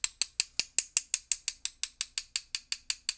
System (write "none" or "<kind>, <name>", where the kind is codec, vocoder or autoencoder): none